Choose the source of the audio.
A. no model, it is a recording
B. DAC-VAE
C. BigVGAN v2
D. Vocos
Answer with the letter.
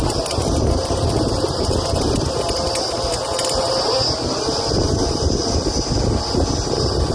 A